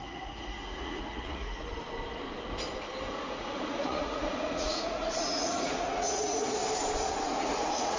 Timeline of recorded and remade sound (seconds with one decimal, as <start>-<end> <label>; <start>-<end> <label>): 0.0-1.7 remade; 1.7-3.1 recorded; 3.1-6.6 remade; 6.6-7.3 recorded; 7.3-8.0 remade